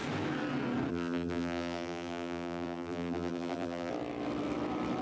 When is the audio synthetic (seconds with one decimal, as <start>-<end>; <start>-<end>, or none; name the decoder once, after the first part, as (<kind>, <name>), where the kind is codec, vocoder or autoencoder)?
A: 0.9-3.9 (vocoder, BigVGAN v2)